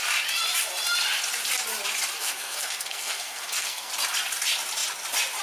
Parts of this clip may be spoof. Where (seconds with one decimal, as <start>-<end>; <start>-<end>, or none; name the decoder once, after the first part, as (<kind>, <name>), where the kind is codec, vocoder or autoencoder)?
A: 2.2-3.9 (codec, SNAC)